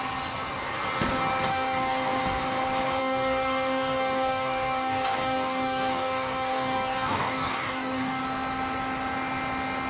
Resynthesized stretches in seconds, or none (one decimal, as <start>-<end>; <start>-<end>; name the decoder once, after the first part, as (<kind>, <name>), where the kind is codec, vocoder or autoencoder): 1.5-2.2 (codec, DAC); 3.0-8.2